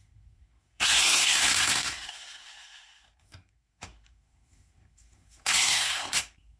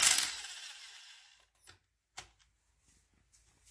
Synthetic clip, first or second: first